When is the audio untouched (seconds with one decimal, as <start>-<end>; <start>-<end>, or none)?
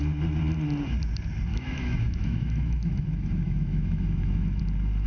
0.0-1.5; 4.6-5.1